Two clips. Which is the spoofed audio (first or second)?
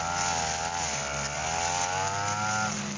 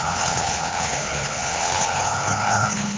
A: second